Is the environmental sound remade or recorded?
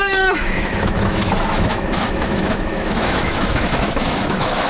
remade